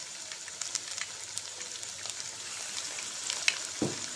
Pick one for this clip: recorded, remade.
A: recorded